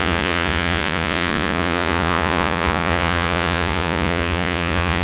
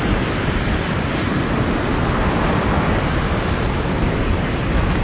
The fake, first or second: first